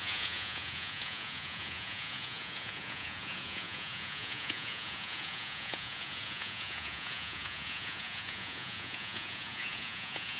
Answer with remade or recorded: remade